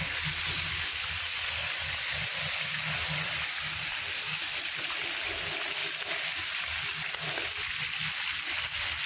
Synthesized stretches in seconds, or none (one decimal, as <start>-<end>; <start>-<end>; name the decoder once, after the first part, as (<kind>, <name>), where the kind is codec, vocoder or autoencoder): none